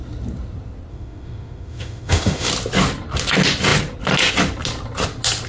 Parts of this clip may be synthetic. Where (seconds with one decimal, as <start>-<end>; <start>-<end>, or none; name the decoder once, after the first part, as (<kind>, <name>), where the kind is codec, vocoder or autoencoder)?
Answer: 0.9-2.5 (autoencoder, DAC-VAE)